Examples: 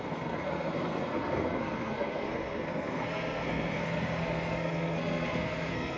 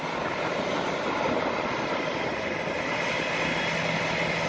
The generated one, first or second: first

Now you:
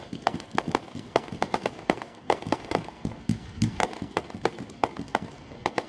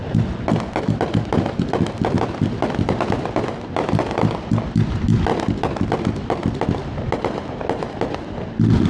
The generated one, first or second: first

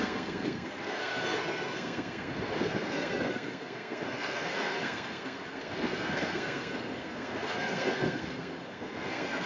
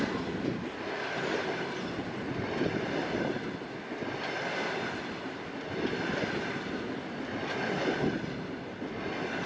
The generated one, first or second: first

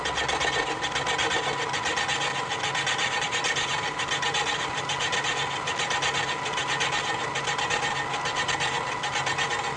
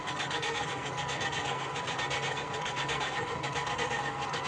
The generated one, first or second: second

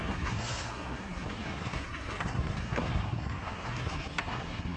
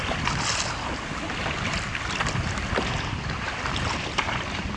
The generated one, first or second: first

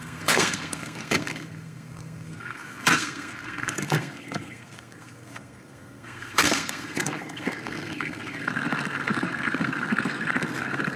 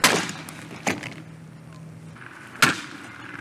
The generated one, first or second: first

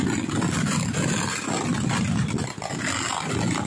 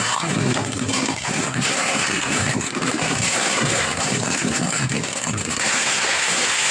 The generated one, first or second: second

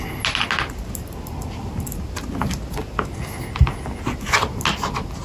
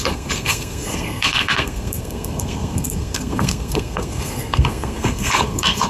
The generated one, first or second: second